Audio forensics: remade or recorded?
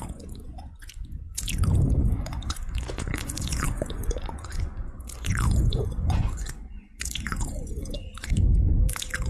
remade